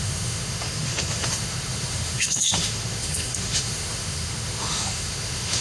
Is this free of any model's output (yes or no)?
no